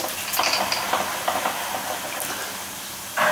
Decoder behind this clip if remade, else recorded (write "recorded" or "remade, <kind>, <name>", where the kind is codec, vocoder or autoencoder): recorded